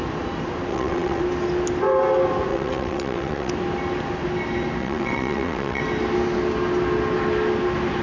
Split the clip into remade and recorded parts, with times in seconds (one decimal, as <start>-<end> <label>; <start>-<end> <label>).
0.0-0.7 recorded; 0.7-1.2 remade; 1.2-2.5 recorded; 2.5-3.5 remade; 3.5-4.8 recorded; 4.8-5.8 remade; 5.8-8.0 recorded